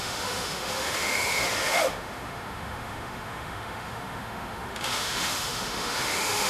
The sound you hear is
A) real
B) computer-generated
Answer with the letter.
B